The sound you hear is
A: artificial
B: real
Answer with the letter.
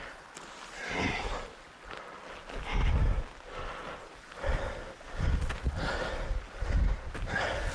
B